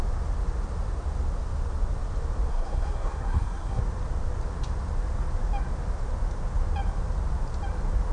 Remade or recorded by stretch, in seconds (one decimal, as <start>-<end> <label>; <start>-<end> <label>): 0.0-2.5 recorded; 2.5-3.8 remade; 3.8-8.1 recorded